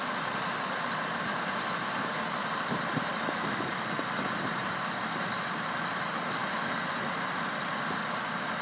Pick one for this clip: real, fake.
fake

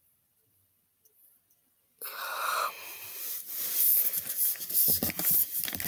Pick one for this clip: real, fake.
real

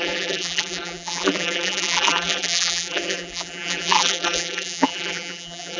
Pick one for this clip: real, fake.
fake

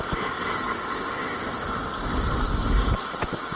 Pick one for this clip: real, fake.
real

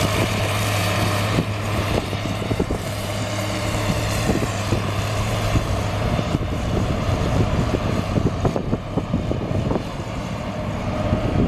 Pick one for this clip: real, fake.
fake